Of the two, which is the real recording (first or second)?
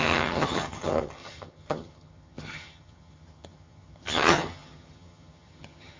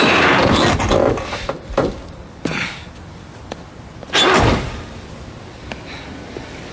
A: second